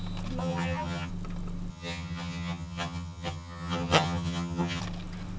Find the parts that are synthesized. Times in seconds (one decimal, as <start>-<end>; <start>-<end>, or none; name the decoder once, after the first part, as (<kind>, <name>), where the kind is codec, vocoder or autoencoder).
0.4-1.1 (vocoder, HiFi-GAN); 1.7-4.8